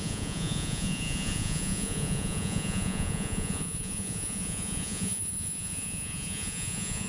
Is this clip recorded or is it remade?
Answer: remade